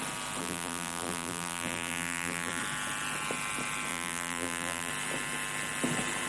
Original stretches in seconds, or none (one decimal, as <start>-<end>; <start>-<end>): 0.0-0.4; 2.6-3.9; 4.9-6.3